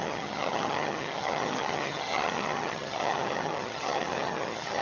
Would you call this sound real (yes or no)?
no